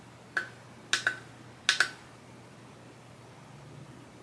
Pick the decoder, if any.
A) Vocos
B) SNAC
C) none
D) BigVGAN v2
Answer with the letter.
C